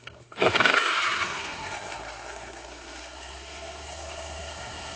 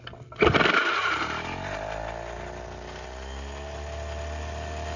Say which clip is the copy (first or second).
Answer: first